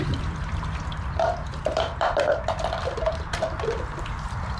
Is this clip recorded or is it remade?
remade